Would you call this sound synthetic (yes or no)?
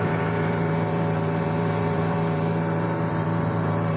yes